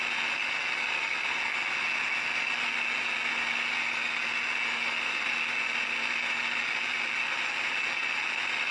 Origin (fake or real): real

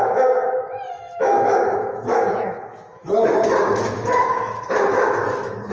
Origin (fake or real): fake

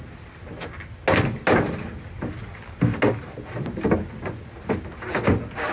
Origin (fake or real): real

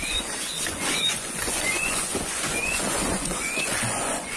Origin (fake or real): fake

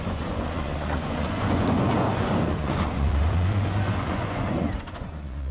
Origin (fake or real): fake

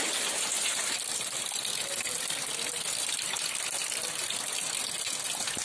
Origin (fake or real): real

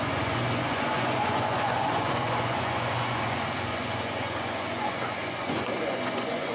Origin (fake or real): fake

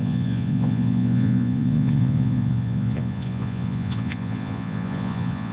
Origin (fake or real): fake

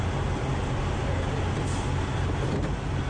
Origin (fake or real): real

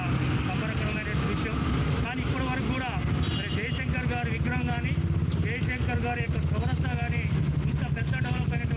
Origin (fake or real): real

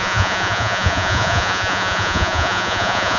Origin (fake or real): fake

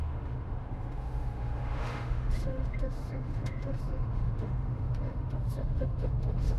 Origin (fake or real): fake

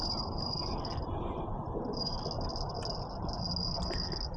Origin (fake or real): real